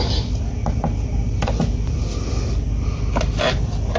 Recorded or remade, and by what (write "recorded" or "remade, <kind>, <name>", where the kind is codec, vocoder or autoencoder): recorded